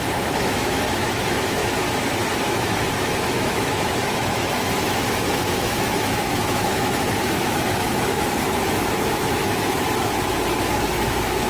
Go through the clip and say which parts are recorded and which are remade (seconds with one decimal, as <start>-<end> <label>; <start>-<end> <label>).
0.0-1.6 remade; 1.6-2.4 recorded; 2.4-11.5 remade